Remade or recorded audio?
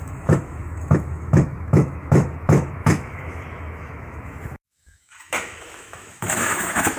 remade